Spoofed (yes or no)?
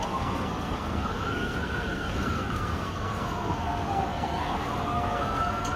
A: yes